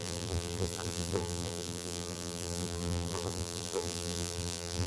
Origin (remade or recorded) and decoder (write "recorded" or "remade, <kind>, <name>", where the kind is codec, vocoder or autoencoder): remade, vocoder, BigVGAN v2